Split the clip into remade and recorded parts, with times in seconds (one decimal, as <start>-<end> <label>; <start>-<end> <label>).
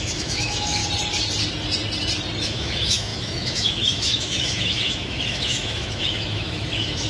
0.0-0.8 remade; 0.8-2.4 recorded; 2.4-7.1 remade